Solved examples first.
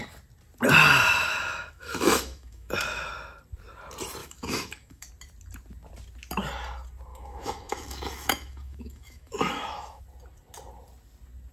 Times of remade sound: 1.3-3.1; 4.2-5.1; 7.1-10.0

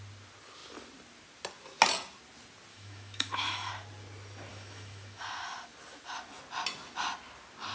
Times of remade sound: 2.7-3.7; 4.5-5.2

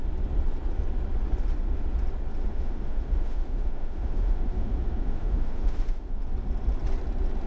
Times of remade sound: 2.4-6.2

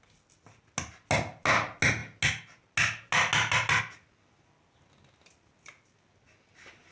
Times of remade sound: none

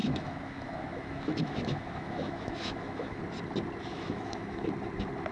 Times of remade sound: 0.0-3.2; 3.9-4.7

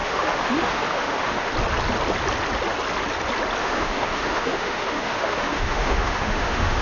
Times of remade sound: 0.0-1.5; 3.6-6.8